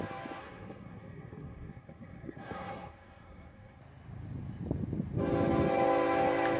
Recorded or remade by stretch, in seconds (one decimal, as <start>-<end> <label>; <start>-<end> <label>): 0.0-0.4 recorded; 0.4-3.8 remade; 3.8-6.6 recorded

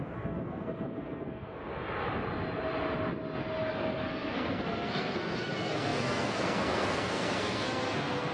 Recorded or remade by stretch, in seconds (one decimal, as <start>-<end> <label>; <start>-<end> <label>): 0.0-1.7 remade; 1.7-3.7 recorded; 3.7-8.3 remade

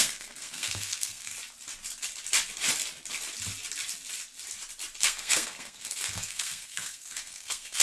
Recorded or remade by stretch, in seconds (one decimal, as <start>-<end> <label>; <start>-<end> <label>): 0.0-1.3 remade; 1.3-5.0 recorded; 5.0-7.8 remade